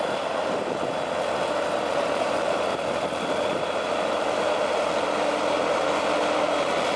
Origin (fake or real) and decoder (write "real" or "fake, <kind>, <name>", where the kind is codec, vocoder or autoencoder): fake, vocoder, BigVGAN v2